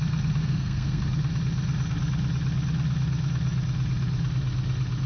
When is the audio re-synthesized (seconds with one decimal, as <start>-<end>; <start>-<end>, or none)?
0.4-1.0